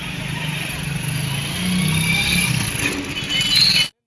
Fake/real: real